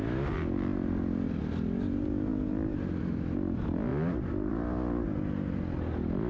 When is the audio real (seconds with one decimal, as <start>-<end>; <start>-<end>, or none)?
0.0-6.3